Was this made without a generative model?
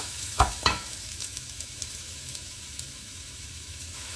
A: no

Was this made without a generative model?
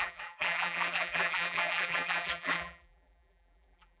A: no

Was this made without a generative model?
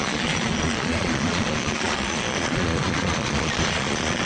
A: no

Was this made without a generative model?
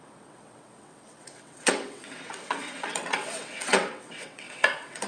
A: no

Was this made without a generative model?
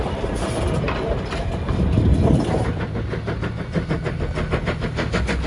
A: yes